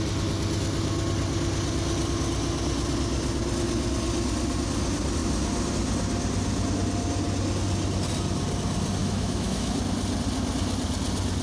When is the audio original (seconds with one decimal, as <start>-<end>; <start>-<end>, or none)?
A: 0.0-9.0; 9.8-11.4